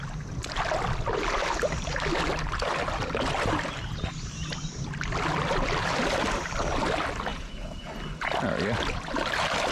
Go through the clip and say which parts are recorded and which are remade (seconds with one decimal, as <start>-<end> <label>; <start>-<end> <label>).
0.0-7.3 recorded; 7.3-7.9 remade; 7.9-9.7 recorded